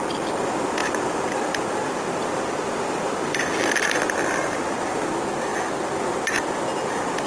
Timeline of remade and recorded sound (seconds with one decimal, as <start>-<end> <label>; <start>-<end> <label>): 0.0-0.8 recorded; 0.8-4.0 remade; 4.0-7.3 recorded